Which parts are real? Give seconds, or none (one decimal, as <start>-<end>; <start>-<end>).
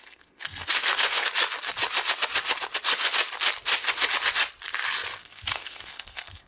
1.3-5.2